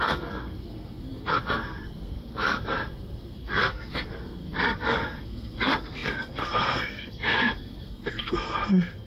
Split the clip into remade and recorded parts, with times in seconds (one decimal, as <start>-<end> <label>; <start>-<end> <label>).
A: 0.0-9.1 remade